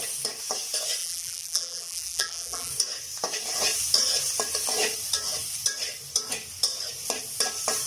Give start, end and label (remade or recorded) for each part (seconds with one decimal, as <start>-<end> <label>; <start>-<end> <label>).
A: 0.0-1.0 recorded; 1.0-2.7 remade; 2.7-7.9 recorded